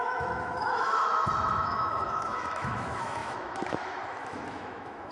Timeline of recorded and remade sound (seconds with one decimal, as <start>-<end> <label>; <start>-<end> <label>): 0.0-5.1 remade